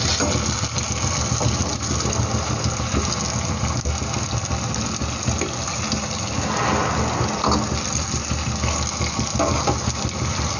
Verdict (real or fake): real